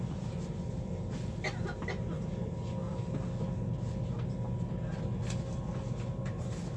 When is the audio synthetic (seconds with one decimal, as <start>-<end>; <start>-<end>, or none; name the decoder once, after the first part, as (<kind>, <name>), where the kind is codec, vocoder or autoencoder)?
none